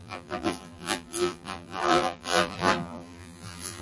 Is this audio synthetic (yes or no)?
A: yes